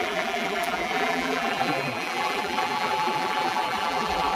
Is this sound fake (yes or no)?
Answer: yes